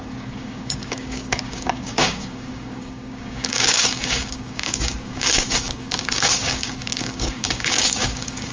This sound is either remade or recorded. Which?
remade